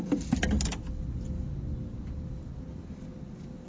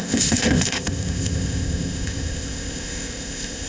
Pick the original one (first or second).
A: first